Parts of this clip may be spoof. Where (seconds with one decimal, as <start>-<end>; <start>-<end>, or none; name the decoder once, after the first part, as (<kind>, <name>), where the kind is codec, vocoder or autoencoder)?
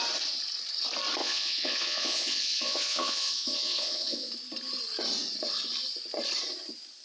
1.2-4.3 (vocoder, Vocos)